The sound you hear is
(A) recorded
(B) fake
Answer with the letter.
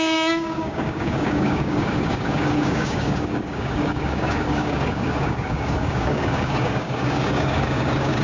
B